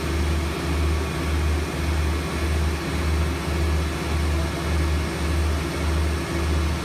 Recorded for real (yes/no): yes